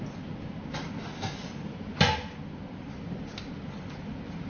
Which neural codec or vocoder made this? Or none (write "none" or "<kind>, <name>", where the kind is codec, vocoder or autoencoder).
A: none